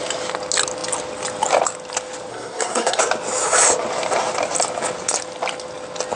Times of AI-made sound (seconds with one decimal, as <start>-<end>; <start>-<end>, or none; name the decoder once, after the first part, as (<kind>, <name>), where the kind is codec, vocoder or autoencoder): 2.3-3.0 (codec, SNAC)